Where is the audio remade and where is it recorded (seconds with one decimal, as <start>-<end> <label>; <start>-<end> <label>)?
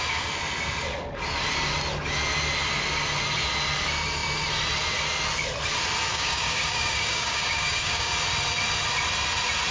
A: 0.0-6.1 recorded; 6.1-8.1 remade; 8.1-9.7 recorded